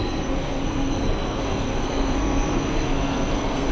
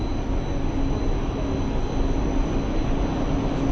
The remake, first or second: first